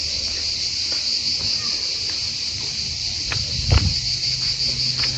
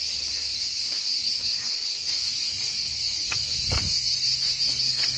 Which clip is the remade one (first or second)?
second